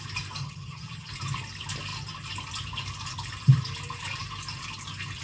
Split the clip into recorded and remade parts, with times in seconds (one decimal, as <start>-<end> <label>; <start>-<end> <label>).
0.0-0.4 recorded; 0.4-1.1 remade; 1.1-5.2 recorded